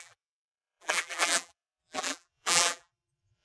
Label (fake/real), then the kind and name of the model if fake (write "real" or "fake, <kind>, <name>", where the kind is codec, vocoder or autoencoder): fake, vocoder, BigVGAN v2